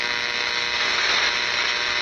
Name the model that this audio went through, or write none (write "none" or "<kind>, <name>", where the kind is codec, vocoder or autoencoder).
none